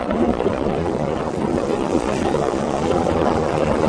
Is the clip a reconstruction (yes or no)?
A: yes